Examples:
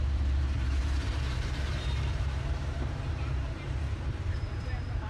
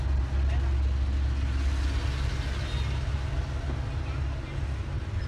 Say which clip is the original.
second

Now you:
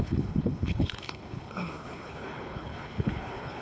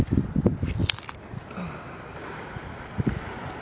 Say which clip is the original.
second